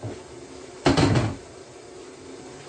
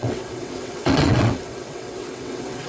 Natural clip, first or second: first